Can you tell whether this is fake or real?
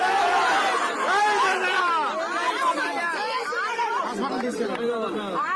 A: real